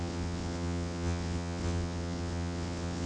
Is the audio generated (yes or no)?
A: yes